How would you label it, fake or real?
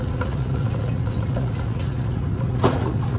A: fake